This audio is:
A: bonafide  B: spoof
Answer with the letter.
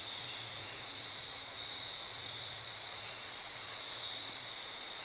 B